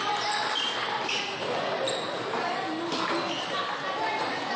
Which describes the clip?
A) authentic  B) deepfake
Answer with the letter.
A